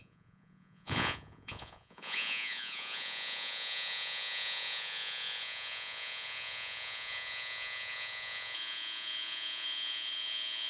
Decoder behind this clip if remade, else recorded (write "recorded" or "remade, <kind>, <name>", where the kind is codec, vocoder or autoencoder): remade, vocoder, Vocos